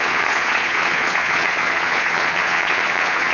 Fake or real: fake